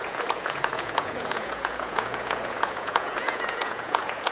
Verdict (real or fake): fake